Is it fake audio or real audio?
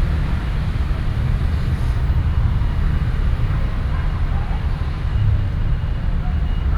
real